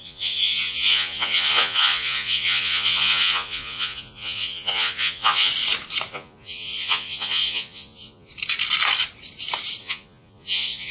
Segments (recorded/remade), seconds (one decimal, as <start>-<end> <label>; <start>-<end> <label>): 0.0-5.5 remade; 5.5-6.1 recorded; 6.1-8.3 remade; 8.3-9.8 recorded; 9.8-10.9 remade